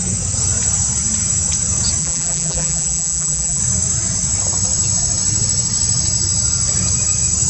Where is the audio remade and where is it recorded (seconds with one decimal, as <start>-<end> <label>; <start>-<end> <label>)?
0.0-2.0 recorded; 2.0-3.6 remade; 3.6-7.5 recorded